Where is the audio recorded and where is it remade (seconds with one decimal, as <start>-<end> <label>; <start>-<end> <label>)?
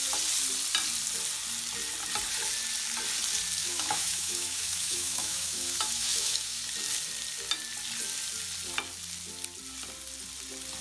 0.0-3.6 recorded; 3.6-6.6 remade; 6.6-10.8 recorded